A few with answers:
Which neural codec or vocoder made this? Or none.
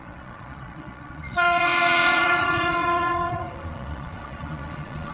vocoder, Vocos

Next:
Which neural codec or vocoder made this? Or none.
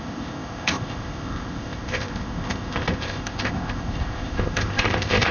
codec, ZipCodec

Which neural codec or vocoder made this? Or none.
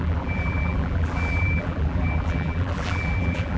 vocoder, BigVGAN v2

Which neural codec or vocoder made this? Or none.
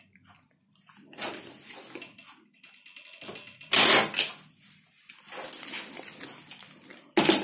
none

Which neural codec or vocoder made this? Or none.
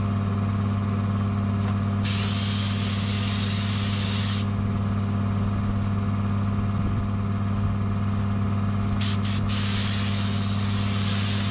none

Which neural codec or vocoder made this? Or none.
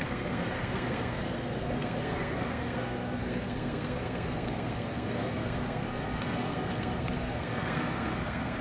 codec, SNAC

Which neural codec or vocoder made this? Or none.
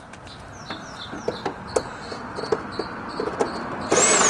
none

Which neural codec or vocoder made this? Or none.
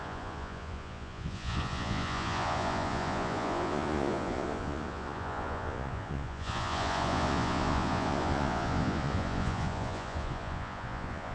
vocoder, Vocos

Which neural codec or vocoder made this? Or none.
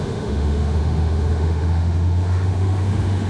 autoencoder, DAC-VAE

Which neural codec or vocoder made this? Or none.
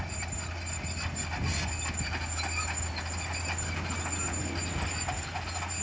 none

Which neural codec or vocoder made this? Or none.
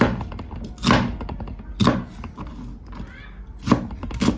none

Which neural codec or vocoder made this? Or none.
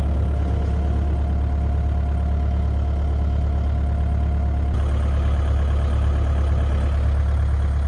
none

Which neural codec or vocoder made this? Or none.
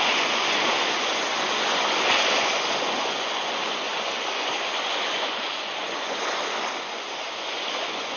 vocoder, Vocos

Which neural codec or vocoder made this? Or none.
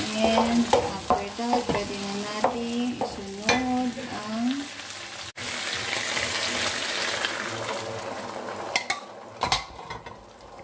none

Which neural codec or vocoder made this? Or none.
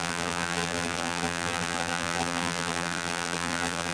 vocoder, BigVGAN v2